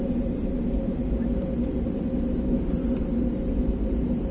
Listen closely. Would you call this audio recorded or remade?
remade